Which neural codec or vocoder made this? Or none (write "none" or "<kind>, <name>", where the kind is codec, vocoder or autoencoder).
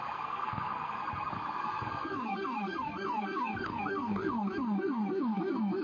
codec, SNAC